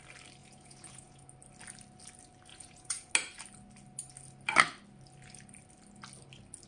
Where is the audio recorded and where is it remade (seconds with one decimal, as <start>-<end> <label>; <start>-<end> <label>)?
0.0-0.4 recorded; 0.4-1.3 remade; 1.3-2.5 recorded; 2.5-3.1 remade; 3.1-6.7 recorded